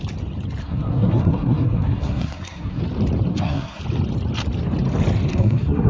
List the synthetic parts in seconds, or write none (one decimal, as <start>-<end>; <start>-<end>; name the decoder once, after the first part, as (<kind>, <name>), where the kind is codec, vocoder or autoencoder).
0.6-2.8 (codec, SNAC); 3.3-3.8; 5.3-5.9